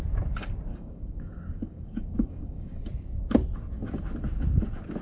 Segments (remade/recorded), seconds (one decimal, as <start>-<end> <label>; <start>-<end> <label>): 0.0-0.7 recorded; 0.7-2.8 remade; 2.8-5.0 recorded